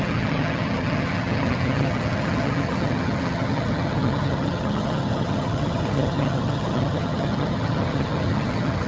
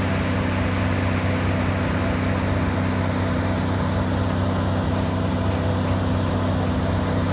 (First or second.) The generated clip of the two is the first